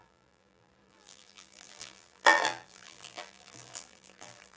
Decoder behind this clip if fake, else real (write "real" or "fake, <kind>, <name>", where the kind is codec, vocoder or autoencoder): fake, vocoder, BigVGAN v2